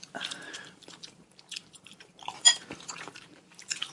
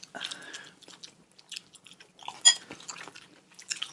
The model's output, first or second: first